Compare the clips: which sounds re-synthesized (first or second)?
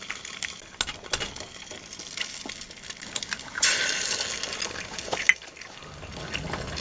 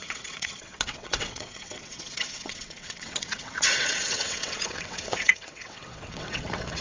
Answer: second